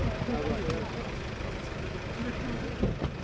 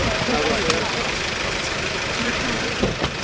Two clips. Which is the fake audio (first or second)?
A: second